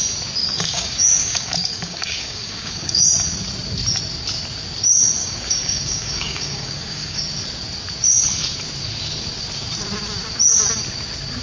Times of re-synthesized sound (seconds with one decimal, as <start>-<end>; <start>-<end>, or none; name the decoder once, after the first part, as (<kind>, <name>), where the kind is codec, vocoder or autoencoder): 0.4-3.0 (codec, DAC); 5.2-7.2